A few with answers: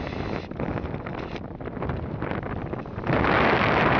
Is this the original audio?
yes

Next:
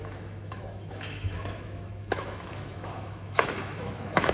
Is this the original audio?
no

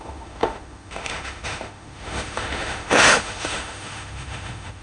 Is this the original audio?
no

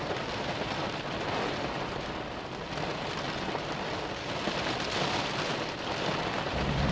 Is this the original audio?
yes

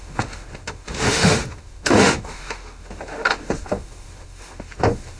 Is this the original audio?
no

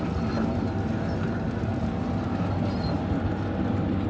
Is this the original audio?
yes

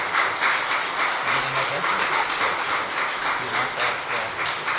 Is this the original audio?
yes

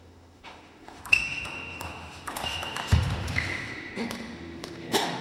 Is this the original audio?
no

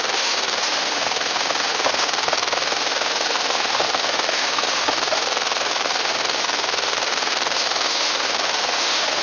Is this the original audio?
no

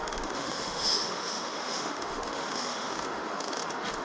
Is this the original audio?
no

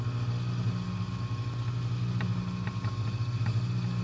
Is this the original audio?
yes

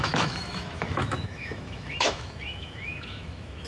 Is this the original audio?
no